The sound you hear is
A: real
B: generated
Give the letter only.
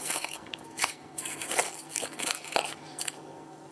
B